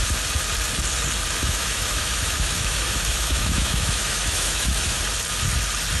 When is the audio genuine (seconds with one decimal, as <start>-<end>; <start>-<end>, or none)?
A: 0.0-1.4; 5.0-6.0